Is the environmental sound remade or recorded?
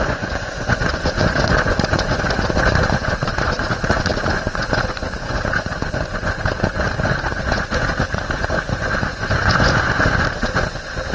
remade